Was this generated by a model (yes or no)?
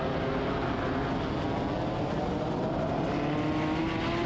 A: no